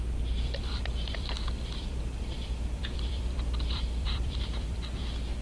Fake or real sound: fake